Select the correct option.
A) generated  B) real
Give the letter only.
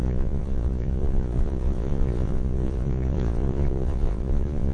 A